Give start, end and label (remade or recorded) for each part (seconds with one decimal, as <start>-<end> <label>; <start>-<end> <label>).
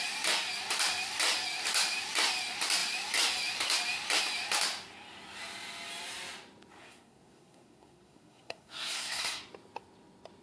0.0-6.8 recorded; 6.8-9.4 remade; 9.4-10.4 recorded